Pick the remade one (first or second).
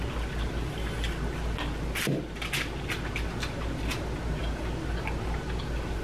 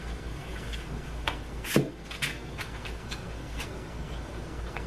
second